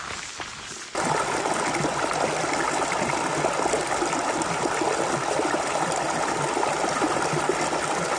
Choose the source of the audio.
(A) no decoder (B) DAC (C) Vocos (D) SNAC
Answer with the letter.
A